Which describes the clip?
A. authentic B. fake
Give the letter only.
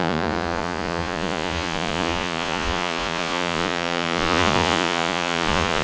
B